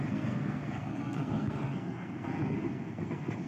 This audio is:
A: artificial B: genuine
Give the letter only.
A